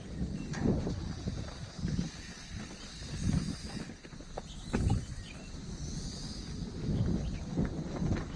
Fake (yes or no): no